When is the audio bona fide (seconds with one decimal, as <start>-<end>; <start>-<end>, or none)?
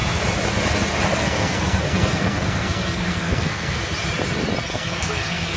0.0-1.2; 3.8-4.7